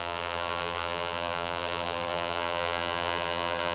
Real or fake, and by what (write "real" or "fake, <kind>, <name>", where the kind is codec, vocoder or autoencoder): fake, vocoder, BigVGAN v2